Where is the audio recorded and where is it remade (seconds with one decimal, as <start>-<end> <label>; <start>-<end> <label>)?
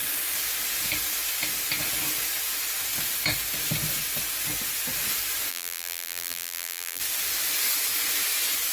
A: 0.0-5.5 recorded; 5.5-7.0 remade; 7.0-8.7 recorded